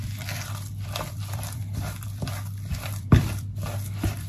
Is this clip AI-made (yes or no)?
yes